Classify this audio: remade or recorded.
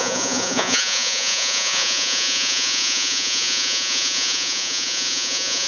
remade